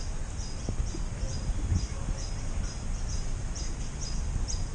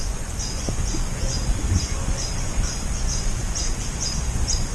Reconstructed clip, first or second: second